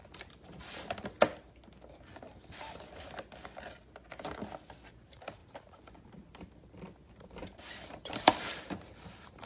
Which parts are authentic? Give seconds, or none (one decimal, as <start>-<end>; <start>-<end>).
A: 0.0-4.9; 5.4-7.1